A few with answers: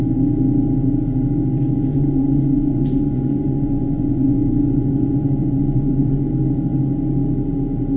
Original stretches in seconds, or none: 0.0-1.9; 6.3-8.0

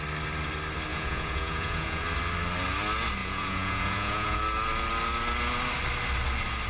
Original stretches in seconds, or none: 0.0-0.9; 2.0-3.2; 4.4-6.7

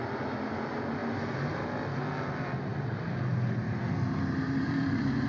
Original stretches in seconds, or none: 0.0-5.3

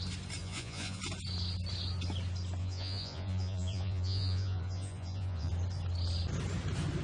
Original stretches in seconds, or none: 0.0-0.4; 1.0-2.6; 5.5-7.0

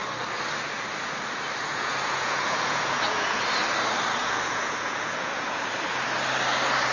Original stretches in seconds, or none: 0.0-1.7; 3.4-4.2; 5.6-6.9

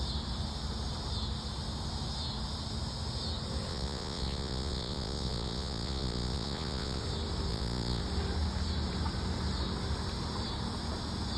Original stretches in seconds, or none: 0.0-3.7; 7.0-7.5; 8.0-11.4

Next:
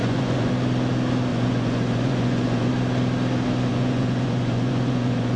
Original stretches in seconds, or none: 0.5-1.3; 2.7-3.7